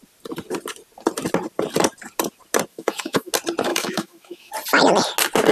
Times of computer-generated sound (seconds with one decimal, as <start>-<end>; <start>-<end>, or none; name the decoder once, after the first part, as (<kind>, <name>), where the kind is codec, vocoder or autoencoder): 2.7-3.3 (autoencoder, DAC-VAE); 3.7-4.5